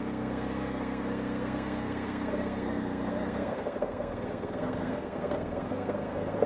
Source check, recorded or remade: remade